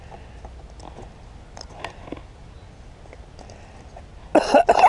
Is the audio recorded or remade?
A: recorded